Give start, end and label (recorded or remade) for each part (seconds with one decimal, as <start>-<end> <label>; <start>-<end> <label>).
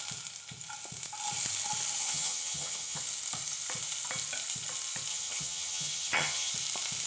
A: 0.0-2.0 recorded; 2.0-3.0 remade; 3.0-5.1 recorded; 5.1-6.5 remade; 6.5-7.1 recorded